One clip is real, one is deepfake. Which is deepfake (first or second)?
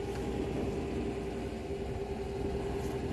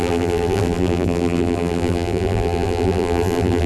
second